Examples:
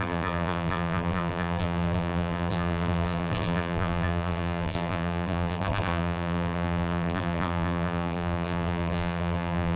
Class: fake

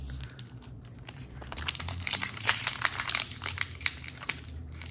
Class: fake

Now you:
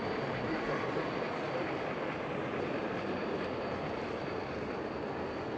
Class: fake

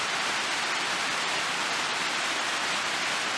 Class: fake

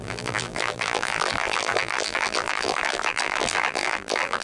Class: fake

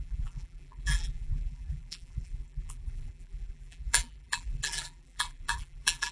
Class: fake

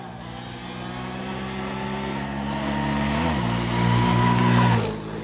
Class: real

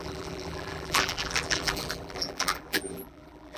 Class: fake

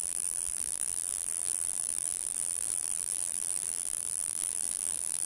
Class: fake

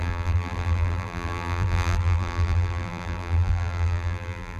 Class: fake